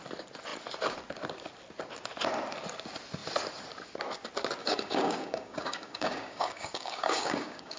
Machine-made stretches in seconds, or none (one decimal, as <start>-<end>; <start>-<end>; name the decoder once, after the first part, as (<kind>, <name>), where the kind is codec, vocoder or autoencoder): 4.6-7.8 (codec, DAC)